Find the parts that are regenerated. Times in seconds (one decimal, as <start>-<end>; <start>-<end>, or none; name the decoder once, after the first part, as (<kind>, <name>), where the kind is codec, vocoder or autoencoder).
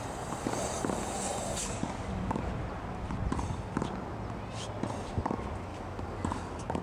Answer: 1.6-2.5 (codec, DAC); 5.7-6.8